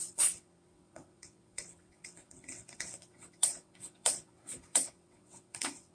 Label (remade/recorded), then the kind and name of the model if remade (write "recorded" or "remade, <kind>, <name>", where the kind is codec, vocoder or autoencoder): remade, vocoder, WaveNeXt